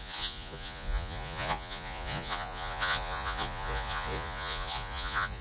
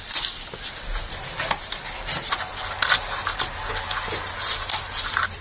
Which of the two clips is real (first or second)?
second